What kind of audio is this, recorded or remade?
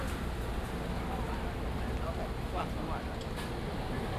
recorded